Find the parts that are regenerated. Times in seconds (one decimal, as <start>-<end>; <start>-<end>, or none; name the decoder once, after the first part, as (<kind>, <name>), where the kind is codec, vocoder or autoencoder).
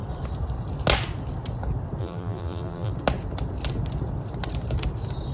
2.0-2.9 (vocoder, BigVGAN v2)